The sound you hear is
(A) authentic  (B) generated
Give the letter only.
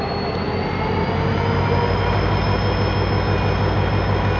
A